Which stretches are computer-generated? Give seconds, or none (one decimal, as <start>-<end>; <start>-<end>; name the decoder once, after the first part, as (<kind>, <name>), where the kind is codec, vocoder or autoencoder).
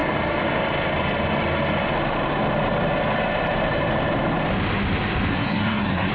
5.3-6.1 (codec, SNAC)